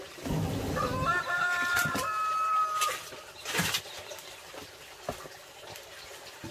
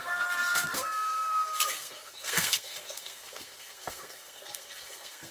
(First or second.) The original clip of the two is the first